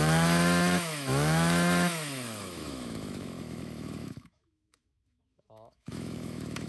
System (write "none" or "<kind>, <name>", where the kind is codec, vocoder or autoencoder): autoencoder, DAC-VAE